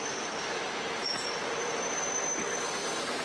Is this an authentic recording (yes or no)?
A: yes